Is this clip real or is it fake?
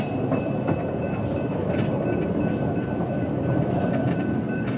fake